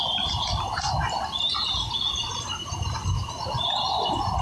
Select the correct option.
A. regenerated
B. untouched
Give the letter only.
B